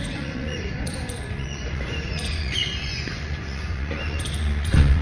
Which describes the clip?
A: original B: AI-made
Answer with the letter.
B